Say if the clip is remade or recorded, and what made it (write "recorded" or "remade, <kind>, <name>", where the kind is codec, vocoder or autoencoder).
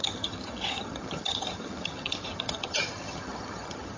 remade, vocoder, HiFi-GAN